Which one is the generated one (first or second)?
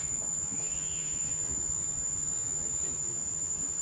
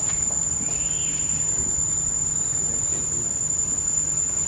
first